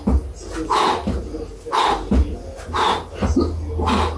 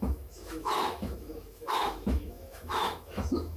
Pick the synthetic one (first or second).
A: second